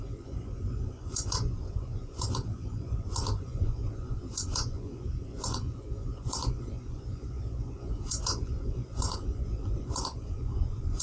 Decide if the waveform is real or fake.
fake